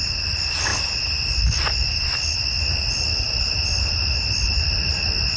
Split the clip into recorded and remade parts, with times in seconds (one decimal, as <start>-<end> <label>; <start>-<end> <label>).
0.0-5.4 recorded